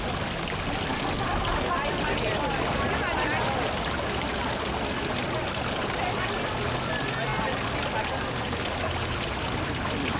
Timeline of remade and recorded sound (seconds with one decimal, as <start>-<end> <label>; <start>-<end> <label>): 0.0-10.2 recorded